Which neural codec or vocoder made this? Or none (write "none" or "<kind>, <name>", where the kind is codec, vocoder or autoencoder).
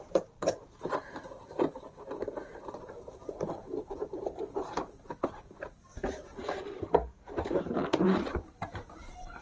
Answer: vocoder, BigVGAN v2